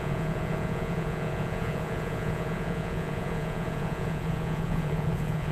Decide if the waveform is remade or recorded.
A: remade